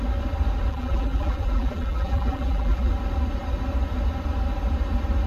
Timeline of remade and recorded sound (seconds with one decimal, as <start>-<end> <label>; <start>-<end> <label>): 0.0-0.7 recorded; 0.7-2.9 remade; 2.9-5.3 recorded